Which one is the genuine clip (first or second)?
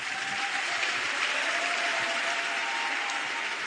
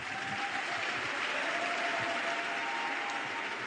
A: second